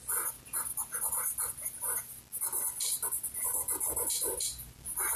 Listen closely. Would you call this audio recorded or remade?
recorded